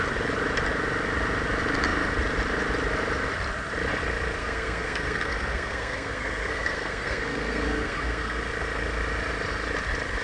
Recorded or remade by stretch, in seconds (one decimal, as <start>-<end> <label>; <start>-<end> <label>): 0.0-4.4 recorded; 4.4-8.4 remade; 8.4-10.2 recorded